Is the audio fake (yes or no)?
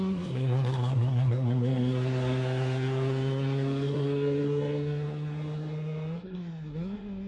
yes